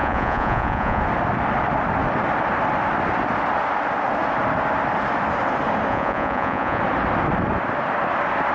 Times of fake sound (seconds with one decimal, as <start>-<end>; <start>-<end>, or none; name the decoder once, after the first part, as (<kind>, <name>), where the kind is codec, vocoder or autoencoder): 0.0-1.0 (vocoder, Vocos); 5.9-6.8